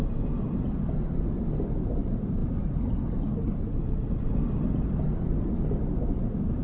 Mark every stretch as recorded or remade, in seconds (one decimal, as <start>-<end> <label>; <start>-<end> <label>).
0.0-6.6 recorded